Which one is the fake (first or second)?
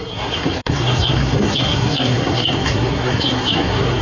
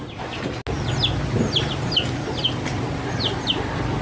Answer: first